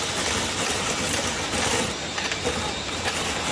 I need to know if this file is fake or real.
real